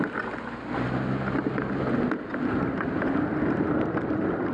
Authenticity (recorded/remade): recorded